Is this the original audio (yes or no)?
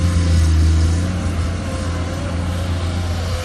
yes